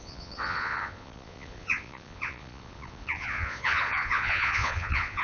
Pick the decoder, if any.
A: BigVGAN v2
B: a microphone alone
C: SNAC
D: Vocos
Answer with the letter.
D